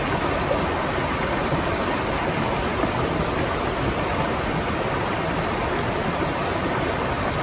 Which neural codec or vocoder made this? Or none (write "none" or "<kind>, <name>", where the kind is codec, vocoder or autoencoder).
none